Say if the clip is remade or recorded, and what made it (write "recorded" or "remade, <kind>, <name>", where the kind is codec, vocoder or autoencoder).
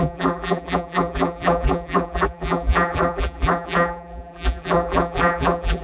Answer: remade, vocoder, BigVGAN v2